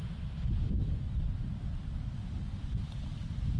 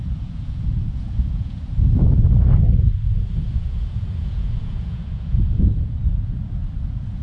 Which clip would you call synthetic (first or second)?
second